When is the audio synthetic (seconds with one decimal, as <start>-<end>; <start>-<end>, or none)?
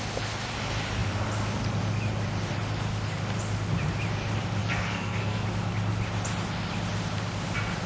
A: 4.6-5.4